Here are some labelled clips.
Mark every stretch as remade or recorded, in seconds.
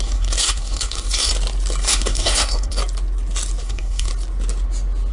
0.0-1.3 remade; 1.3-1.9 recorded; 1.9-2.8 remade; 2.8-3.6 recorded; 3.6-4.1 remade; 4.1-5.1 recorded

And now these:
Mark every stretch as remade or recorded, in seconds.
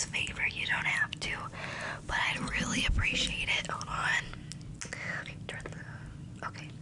0.0-0.8 remade; 0.8-6.8 recorded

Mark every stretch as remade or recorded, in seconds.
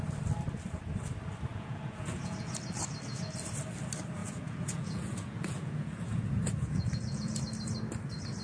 0.0-1.5 recorded; 1.5-2.6 remade; 2.6-4.2 recorded; 4.2-7.4 remade; 7.4-8.4 recorded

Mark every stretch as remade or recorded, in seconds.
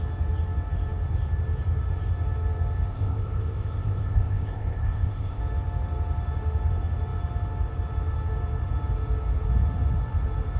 0.0-2.9 recorded; 2.9-5.4 remade; 5.4-10.6 recorded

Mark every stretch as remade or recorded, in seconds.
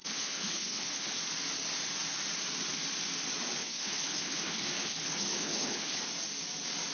0.0-1.2 remade; 1.2-3.6 recorded; 3.6-6.0 remade; 6.0-6.9 recorded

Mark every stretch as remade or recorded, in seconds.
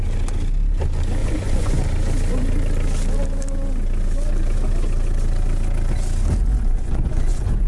0.0-1.2 recorded; 1.2-1.8 remade; 1.8-6.4 recorded; 6.4-7.7 remade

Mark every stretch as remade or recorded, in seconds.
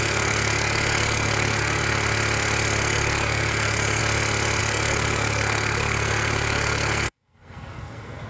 0.0-1.8 remade; 1.8-2.8 recorded; 2.8-4.0 remade; 4.0-4.6 recorded; 4.6-8.3 remade